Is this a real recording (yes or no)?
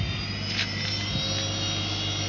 yes